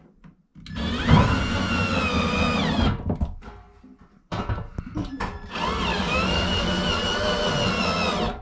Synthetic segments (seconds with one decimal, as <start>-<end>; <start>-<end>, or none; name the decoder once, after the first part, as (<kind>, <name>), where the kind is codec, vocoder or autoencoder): 5.9-6.7 (codec, DAC)